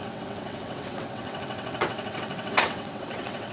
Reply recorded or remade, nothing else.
remade